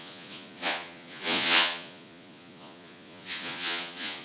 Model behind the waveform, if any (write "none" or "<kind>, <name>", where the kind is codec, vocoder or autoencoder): vocoder, Vocos